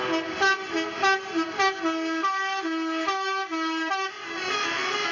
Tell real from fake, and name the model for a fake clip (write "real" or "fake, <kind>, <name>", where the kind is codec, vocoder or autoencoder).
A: real